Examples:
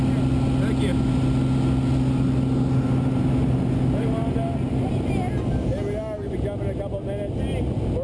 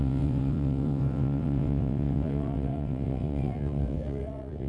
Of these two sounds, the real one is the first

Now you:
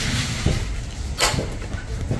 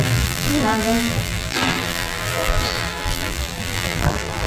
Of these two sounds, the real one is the first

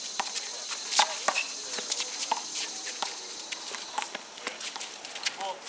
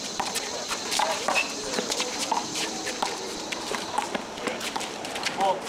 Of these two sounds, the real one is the first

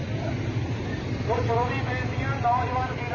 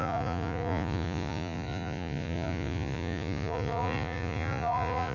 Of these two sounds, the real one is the first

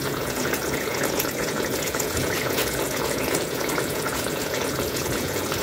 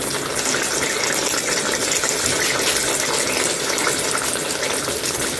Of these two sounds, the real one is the second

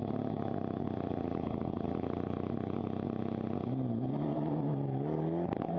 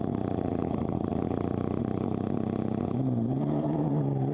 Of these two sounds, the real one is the first